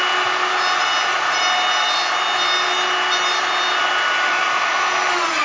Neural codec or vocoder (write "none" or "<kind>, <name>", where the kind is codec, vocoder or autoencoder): none